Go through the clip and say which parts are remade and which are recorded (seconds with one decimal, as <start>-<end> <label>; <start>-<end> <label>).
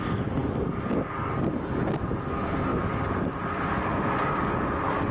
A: 0.0-2.7 recorded; 2.7-4.1 remade; 4.1-5.1 recorded